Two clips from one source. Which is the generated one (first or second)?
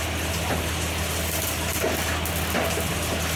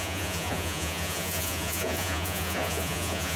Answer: second